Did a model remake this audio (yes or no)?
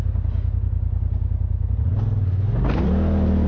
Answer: no